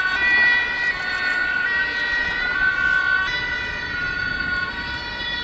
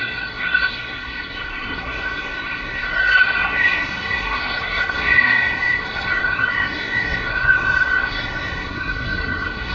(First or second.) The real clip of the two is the first